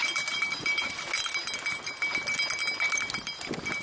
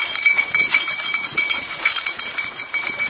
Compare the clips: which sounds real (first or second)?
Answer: first